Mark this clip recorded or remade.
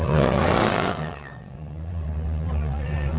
remade